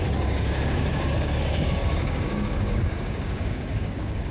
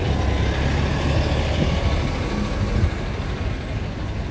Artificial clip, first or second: first